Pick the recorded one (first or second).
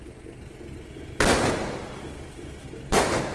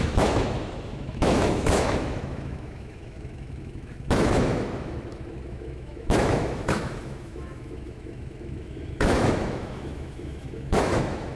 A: first